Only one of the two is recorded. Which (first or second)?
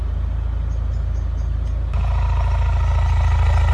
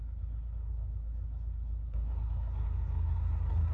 first